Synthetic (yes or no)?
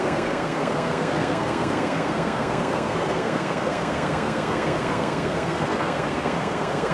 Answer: yes